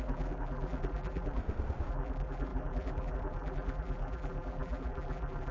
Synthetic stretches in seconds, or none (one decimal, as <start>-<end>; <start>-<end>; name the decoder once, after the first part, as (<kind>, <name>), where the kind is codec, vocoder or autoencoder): 0.0-1.4 (vocoder, BigVGAN v2); 1.9-5.5